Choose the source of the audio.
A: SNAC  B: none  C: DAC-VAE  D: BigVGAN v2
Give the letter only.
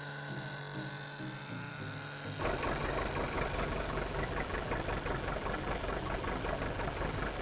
B